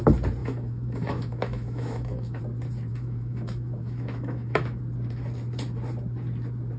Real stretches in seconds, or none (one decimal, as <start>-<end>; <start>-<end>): 0.0-0.4; 2.4-2.9; 4.8-6.8